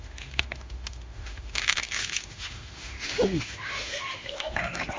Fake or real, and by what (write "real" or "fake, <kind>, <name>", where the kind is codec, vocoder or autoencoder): fake, autoencoder, DAC-VAE